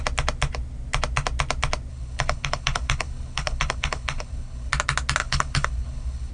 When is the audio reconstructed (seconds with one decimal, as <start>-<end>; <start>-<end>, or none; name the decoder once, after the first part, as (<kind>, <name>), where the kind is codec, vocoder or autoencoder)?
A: 1.9-4.7 (codec, HILCodec); 5.2-6.3